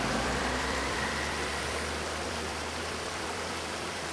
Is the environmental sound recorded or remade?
remade